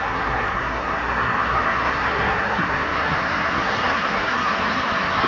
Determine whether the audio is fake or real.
fake